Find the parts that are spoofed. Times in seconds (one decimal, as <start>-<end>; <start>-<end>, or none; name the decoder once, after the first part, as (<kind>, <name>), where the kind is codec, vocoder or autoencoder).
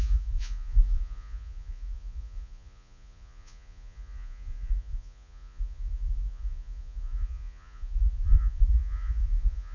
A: 0.0-9.7 (vocoder, Vocos)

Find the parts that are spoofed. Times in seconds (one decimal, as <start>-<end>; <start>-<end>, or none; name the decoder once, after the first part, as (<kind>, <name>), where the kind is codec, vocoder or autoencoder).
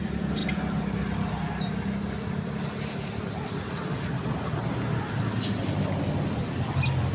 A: none